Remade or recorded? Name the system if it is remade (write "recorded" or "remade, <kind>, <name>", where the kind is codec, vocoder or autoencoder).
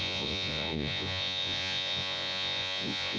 remade, vocoder, Vocos